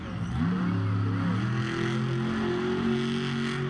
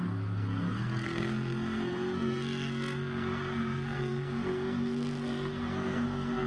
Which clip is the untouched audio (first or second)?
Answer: first